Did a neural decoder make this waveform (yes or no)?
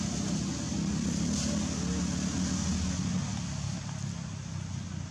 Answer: no